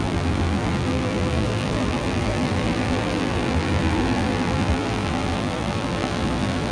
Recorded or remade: remade